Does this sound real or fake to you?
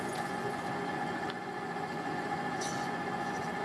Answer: fake